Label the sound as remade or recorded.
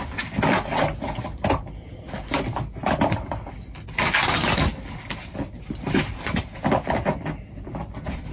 recorded